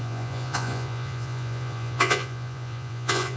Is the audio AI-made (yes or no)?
yes